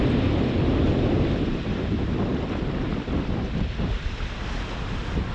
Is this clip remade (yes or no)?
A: yes